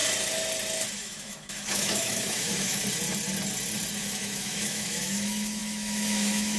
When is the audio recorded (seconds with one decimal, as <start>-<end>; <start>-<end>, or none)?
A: 0.0-1.0; 2.8-4.0